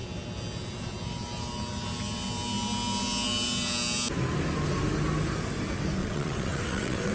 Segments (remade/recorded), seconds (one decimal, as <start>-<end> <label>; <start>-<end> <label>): 0.0-6.0 recorded; 6.0-7.1 remade

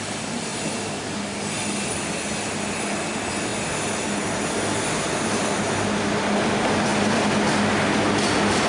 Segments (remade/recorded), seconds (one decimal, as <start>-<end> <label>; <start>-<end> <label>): 0.0-8.7 recorded

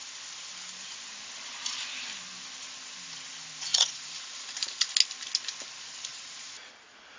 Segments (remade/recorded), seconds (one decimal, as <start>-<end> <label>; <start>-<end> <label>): 0.0-3.7 recorded; 3.7-4.9 remade; 4.9-6.1 recorded; 6.1-7.2 remade

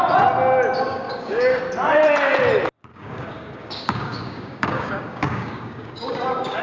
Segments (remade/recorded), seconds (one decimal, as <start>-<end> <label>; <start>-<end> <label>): 0.0-0.9 recorded; 0.9-1.6 remade; 1.6-2.9 recorded; 2.9-6.6 remade